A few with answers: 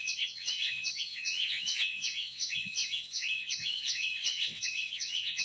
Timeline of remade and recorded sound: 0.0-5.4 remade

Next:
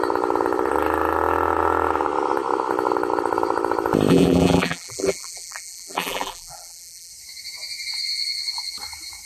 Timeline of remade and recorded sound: 0.0-4.1 recorded; 4.1-7.1 remade; 7.1-9.3 recorded

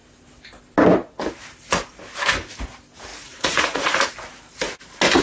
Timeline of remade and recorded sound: 0.0-3.1 recorded; 3.1-4.1 remade; 4.1-5.2 recorded

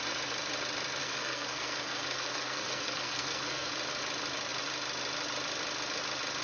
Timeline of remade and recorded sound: 0.0-1.0 recorded; 1.0-3.7 remade; 3.7-6.4 recorded